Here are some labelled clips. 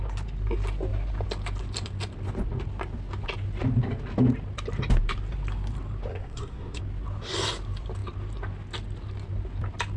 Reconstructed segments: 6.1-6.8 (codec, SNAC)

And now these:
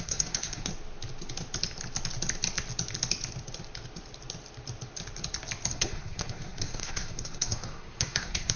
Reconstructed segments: 0.0-0.7 (codec, SNAC); 5.7-8.6

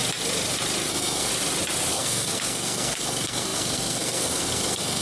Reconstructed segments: 0.9-1.3 (codec, SNAC); 1.9-5.0

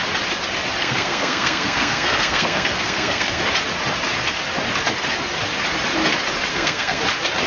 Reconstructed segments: 0.8-3.4 (codec, SNAC); 6.5-7.0

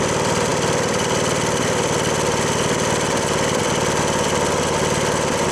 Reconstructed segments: none

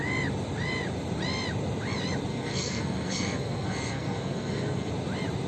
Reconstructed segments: 2.3-4.9 (codec, SNAC)

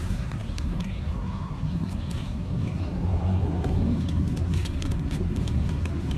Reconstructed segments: 0.0-6.2 (codec, SNAC)

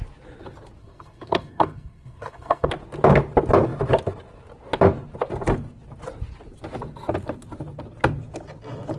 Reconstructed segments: 0.8-2.7 (codec, SNAC)